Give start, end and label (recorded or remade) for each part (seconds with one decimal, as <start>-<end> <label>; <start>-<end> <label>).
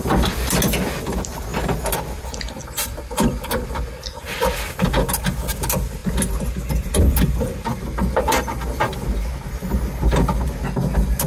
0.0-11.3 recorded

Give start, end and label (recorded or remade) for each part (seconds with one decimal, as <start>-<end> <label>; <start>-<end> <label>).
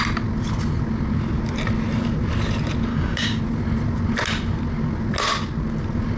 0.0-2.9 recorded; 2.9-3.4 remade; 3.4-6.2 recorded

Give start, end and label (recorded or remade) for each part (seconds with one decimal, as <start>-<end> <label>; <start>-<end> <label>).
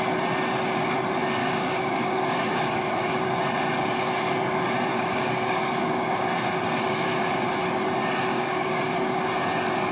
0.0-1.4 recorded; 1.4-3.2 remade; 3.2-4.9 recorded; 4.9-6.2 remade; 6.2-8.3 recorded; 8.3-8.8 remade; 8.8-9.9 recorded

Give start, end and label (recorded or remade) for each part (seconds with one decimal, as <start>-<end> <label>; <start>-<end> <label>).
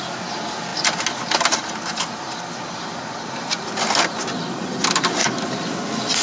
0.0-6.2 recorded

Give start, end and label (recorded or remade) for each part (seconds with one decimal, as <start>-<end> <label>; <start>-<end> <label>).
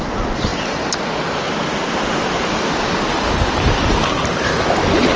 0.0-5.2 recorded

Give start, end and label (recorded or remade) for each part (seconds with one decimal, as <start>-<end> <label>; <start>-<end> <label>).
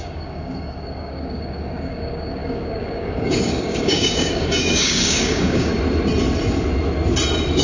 0.0-5.7 remade; 5.7-7.6 recorded